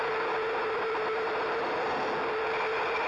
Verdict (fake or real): real